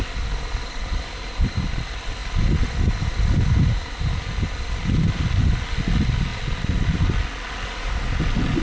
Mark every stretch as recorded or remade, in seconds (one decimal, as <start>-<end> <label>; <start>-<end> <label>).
0.0-8.6 recorded